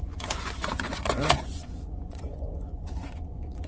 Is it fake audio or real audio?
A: fake